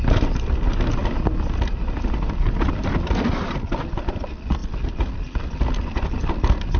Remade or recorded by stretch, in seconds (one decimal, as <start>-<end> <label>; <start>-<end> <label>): 0.0-6.8 recorded